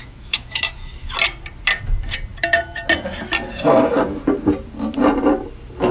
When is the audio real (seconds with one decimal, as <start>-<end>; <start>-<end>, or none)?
1.1-5.9